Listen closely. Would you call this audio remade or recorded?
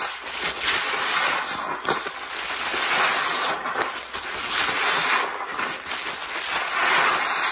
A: recorded